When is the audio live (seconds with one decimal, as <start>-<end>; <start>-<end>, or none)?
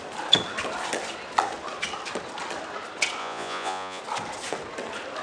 0.0-3.2; 4.0-5.2